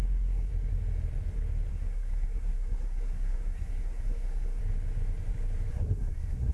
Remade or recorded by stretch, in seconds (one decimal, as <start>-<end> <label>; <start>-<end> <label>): 0.0-0.5 remade; 0.5-1.7 recorded; 1.7-4.6 remade; 4.6-5.7 recorded; 5.7-6.5 remade